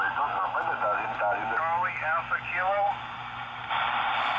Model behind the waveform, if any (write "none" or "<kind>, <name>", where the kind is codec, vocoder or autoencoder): none